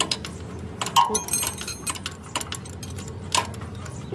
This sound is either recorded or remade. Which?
recorded